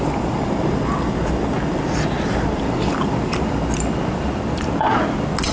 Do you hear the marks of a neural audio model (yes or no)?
no